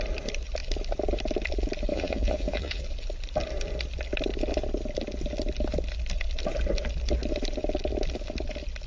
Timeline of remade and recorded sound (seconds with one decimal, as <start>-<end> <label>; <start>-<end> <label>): 0.0-1.9 recorded; 1.9-2.8 remade; 2.8-8.9 recorded